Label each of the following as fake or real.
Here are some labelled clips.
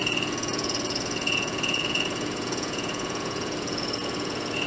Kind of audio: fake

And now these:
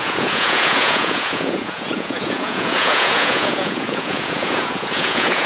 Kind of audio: fake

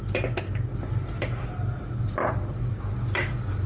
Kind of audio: real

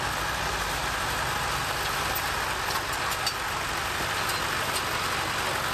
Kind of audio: real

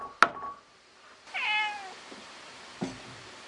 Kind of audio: real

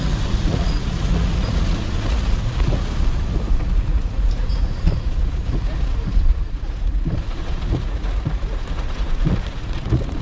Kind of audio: fake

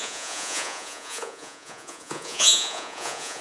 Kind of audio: fake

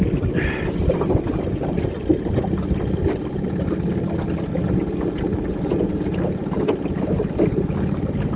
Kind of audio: real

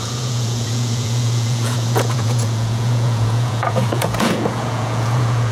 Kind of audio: fake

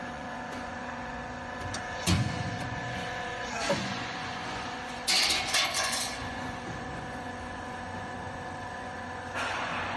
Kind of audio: fake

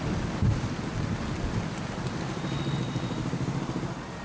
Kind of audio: real